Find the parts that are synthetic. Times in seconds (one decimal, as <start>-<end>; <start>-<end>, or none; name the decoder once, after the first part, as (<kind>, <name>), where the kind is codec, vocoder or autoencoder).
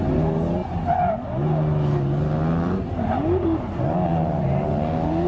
none